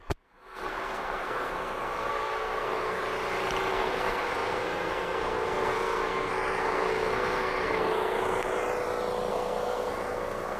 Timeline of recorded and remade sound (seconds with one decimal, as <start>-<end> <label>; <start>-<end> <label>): 0.0-3.0 remade; 3.0-3.7 recorded; 3.7-8.5 remade; 8.5-9.3 recorded; 9.3-10.6 remade